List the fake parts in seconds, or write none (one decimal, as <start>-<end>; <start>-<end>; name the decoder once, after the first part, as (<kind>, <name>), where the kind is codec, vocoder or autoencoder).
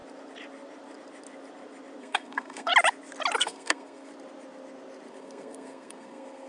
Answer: 2.0-2.7 (codec, SNAC); 3.4-4.1; 5.1-6.5